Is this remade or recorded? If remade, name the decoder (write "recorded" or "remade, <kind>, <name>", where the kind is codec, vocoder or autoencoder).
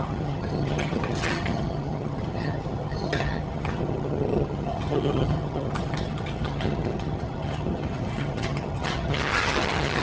remade, vocoder, HiFi-GAN